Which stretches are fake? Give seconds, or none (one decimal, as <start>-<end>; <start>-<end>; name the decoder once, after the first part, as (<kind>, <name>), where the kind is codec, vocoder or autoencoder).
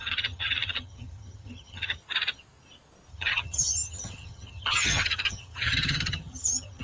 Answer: 0.0-2.0 (vocoder, HiFi-GAN); 3.1-6.8